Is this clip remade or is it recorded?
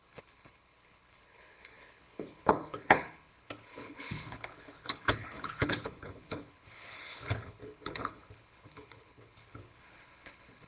remade